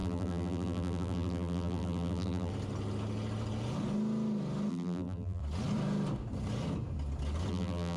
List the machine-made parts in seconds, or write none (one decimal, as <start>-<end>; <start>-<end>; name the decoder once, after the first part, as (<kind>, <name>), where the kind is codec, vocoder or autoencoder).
0.0-2.5 (vocoder, BigVGAN v2); 4.7-5.4; 7.5-8.0